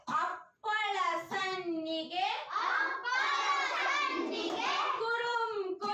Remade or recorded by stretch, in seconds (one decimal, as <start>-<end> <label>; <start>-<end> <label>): 0.0-3.0 remade; 3.0-4.3 recorded; 4.3-5.9 remade